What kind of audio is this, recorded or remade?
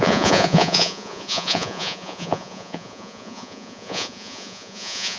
remade